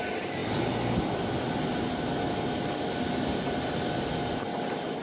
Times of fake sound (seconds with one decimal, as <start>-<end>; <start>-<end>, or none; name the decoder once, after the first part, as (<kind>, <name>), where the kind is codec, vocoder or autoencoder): none